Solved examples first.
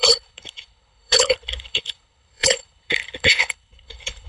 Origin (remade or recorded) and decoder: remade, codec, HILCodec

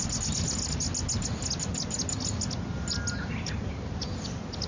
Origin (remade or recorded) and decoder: recorded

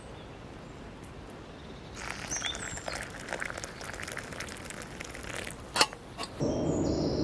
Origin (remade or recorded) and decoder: recorded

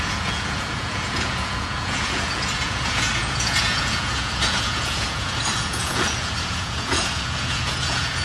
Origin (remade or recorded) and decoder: remade, vocoder, Vocos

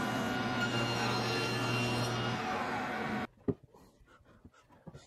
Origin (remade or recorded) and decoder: recorded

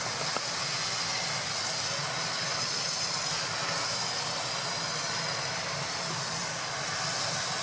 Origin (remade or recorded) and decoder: recorded